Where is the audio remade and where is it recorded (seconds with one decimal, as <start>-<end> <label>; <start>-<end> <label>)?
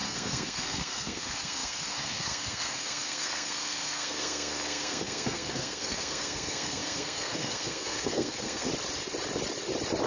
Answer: 0.0-8.7 remade; 8.7-10.1 recorded